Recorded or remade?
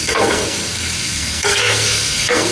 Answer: remade